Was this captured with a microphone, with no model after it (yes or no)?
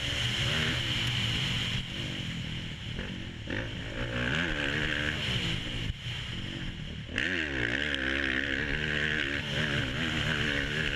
yes